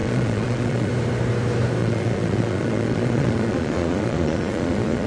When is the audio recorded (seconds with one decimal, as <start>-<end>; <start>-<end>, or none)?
0.9-1.8